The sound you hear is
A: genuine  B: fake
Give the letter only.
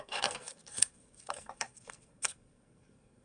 B